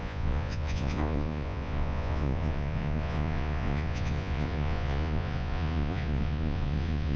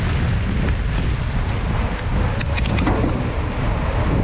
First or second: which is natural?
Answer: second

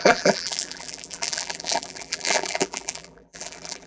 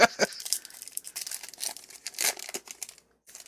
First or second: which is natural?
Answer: second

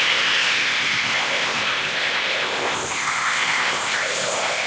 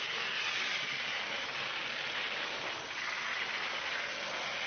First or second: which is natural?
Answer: second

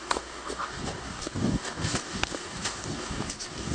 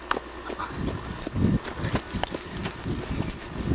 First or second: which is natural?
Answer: second